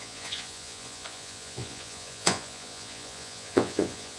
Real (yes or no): no